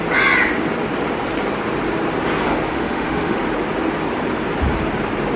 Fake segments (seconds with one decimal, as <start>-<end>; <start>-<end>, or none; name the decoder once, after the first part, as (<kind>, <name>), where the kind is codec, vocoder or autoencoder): 2.7-3.4 (autoencoder, DAC-VAE)